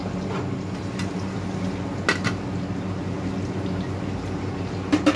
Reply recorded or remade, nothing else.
recorded